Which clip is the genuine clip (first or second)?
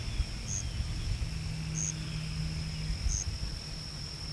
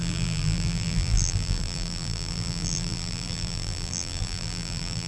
first